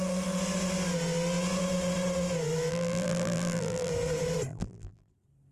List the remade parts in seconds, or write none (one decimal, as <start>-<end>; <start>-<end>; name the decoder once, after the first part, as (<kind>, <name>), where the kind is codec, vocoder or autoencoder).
2.7-3.9 (vocoder, BigVGAN v2); 4.5-5.1